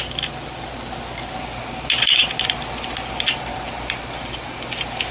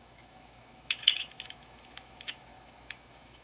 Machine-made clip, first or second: second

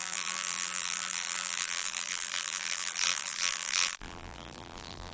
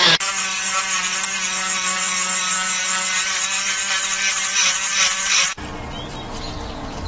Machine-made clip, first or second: first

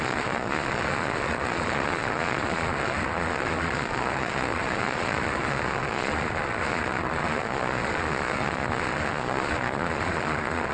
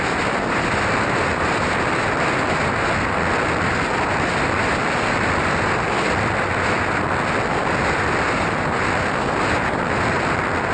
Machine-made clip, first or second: first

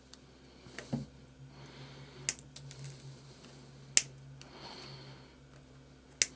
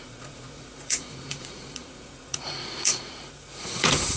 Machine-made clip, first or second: second